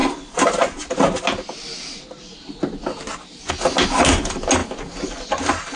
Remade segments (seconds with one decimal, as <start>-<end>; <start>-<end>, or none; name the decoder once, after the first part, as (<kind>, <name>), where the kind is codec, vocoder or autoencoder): none

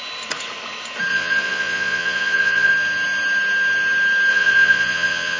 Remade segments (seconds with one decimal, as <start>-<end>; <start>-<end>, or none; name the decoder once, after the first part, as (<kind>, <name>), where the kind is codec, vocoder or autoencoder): 1.1-2.7 (vocoder, Vocos); 4.3-5.4

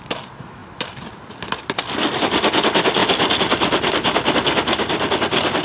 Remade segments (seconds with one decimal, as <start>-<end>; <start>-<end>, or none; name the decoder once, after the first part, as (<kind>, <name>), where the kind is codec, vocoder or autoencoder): none

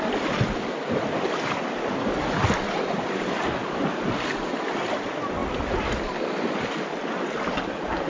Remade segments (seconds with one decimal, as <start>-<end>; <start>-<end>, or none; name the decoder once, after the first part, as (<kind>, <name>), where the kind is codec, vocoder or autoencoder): none

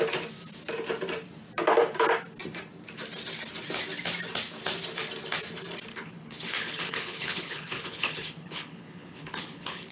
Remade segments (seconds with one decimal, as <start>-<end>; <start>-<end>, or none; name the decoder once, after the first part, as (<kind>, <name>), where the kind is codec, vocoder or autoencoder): 5.9-9.9 (codec, HILCodec)

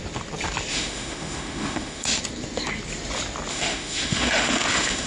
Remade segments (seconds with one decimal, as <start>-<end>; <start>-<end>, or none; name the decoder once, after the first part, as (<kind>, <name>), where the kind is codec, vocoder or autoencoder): 0.7-2.2 (autoencoder, DAC-VAE); 3.5-5.1

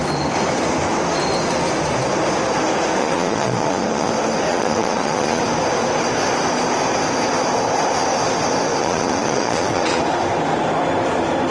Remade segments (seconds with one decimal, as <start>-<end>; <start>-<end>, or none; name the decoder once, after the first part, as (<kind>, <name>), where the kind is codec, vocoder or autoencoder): 3.0-4.1 (vocoder, Vocos); 4.5-5.4; 8.8-10.0

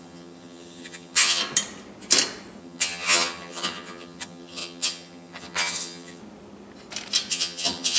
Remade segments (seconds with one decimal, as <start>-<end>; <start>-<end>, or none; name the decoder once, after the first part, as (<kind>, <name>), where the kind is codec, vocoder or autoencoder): 0.0-1.4 (vocoder, HiFi-GAN); 2.6-6.2; 7.3-8.0